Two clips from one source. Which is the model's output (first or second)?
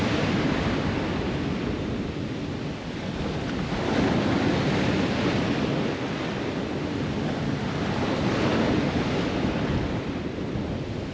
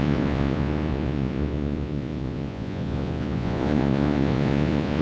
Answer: second